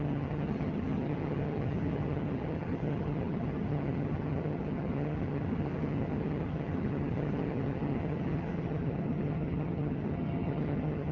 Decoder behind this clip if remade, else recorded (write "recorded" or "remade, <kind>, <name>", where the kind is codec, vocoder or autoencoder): remade, vocoder, HiFi-GAN